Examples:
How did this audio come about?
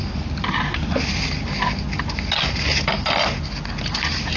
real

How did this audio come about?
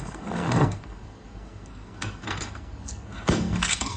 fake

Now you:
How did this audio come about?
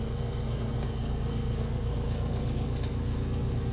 fake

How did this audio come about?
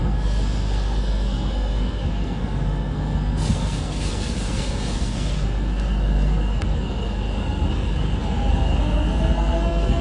fake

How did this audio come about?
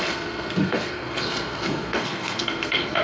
fake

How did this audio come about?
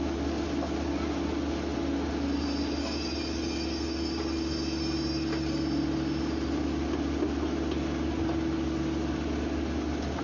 real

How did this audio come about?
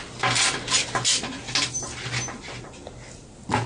real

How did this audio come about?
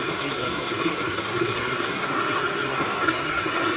fake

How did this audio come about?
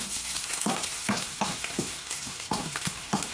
fake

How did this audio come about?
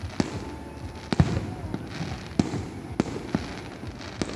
real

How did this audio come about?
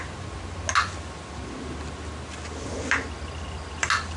real